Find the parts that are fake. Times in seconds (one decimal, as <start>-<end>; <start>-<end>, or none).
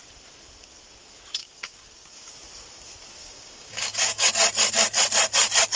1.4-2.3; 3.2-4.3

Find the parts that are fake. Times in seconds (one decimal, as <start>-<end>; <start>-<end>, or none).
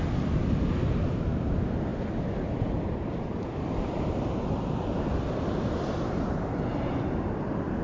none